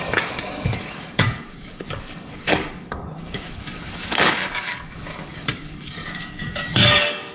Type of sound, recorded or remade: remade